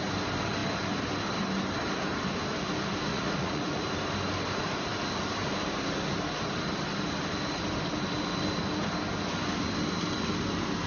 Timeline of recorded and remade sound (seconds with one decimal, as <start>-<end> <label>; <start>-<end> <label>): 0.0-3.1 recorded; 3.1-3.8 remade; 3.8-10.9 recorded